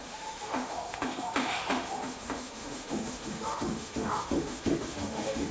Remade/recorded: remade